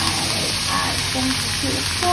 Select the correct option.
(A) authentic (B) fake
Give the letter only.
A